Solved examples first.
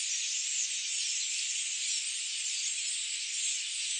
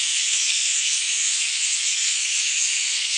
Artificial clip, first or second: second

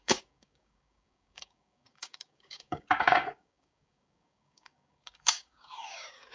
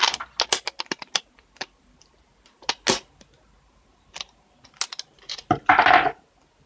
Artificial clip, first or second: first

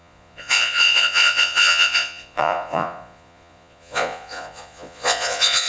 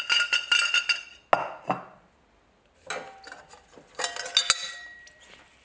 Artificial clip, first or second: first